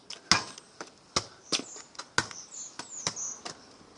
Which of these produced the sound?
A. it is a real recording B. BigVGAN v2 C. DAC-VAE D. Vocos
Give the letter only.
A